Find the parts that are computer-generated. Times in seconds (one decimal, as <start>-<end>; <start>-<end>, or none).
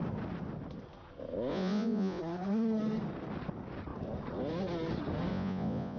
1.5-2.2; 5.3-6.0